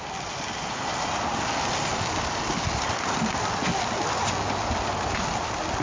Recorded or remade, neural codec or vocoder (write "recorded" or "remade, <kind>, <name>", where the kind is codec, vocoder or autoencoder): recorded